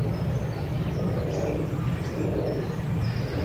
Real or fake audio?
real